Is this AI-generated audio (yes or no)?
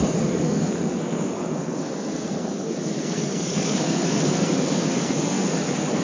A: yes